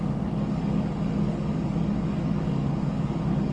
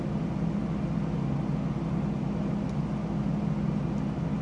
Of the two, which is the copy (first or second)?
first